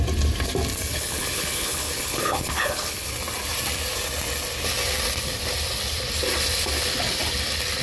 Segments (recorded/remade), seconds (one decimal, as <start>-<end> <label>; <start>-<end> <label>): 0.0-0.9 recorded; 0.9-3.1 remade; 3.1-7.8 recorded